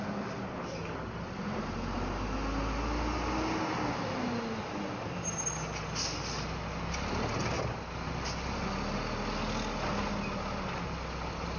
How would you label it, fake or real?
real